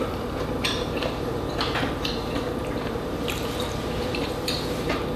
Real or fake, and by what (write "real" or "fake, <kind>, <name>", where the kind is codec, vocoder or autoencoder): fake, vocoder, BigVGAN v2